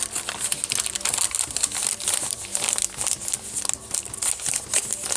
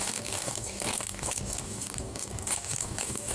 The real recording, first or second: first